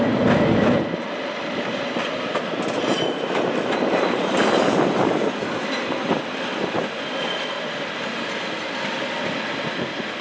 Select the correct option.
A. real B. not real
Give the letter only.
B